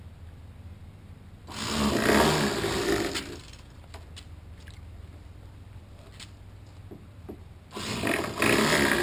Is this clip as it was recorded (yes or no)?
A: yes